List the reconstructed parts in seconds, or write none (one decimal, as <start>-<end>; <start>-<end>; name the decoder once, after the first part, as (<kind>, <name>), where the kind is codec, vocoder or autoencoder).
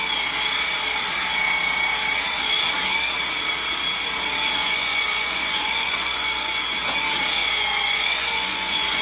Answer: 4.6-6.6 (vocoder, Vocos); 7.4-9.0